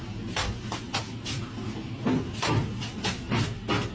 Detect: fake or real real